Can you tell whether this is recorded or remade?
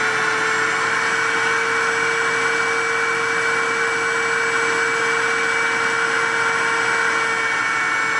recorded